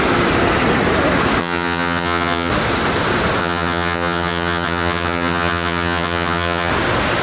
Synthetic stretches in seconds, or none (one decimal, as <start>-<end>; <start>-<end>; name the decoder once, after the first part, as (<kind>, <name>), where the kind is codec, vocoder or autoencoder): 1.4-2.5 (vocoder, HiFi-GAN); 3.4-6.7